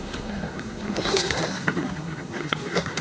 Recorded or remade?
remade